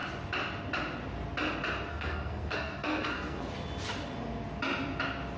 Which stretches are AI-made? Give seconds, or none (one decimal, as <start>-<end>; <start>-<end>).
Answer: 1.9-3.5